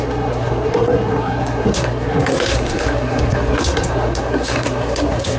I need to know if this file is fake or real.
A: fake